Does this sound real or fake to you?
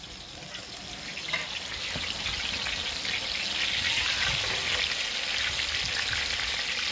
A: real